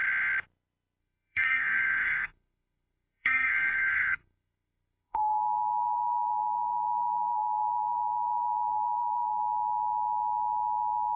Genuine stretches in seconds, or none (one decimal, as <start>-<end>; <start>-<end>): 0.0-1.0; 9.4-11.2